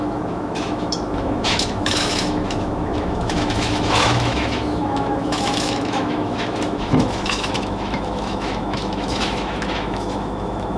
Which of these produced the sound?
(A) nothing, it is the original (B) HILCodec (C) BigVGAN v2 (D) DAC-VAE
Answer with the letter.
D